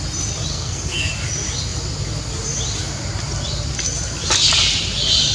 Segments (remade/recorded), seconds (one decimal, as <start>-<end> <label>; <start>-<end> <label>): 0.0-0.5 recorded; 0.5-1.1 remade; 1.1-5.3 recorded